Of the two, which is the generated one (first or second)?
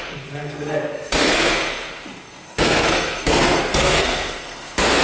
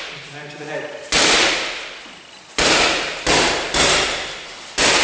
first